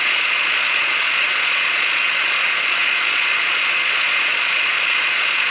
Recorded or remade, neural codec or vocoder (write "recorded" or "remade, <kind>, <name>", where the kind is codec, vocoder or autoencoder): remade, vocoder, Vocos